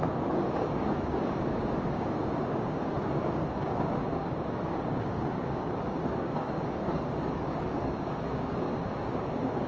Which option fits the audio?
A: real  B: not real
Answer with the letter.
B